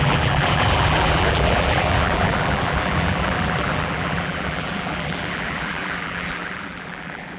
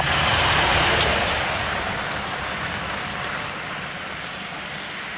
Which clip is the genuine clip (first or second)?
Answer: second